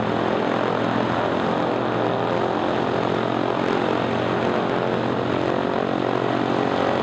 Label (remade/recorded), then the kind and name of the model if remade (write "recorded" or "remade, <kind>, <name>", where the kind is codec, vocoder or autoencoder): recorded